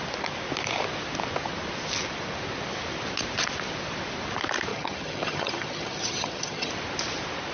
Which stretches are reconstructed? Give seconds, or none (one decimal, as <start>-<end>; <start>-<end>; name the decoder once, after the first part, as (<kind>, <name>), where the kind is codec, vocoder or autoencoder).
4.7-6.7 (vocoder, HiFi-GAN)